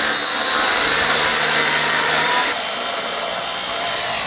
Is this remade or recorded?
recorded